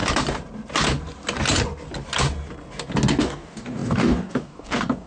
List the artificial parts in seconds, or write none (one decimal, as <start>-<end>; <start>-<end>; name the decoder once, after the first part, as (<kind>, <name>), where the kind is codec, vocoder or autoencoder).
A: 3.1-5.1 (codec, DAC)